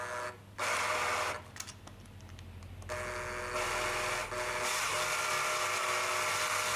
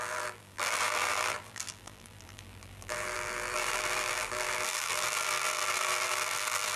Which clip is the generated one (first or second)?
second